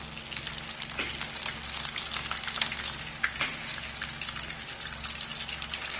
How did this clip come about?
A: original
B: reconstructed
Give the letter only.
A